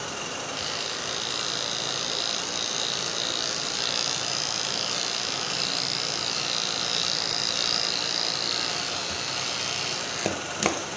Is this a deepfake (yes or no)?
no